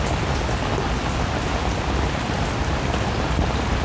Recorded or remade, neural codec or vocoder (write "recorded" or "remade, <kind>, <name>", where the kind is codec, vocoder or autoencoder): recorded